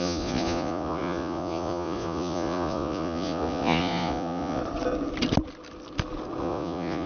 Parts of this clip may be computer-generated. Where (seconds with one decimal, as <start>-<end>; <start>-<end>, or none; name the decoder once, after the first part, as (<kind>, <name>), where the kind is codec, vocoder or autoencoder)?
0.0-4.6 (vocoder, Vocos); 6.4-7.1